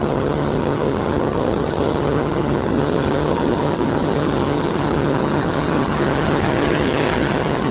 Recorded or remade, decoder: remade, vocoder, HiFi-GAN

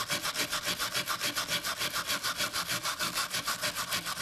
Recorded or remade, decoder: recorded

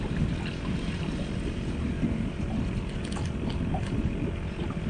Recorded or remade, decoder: recorded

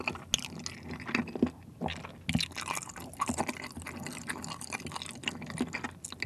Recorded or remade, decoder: recorded